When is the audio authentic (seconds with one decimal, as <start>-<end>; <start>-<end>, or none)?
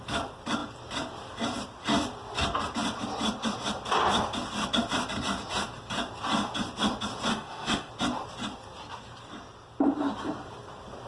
0.0-7.3; 7.9-11.1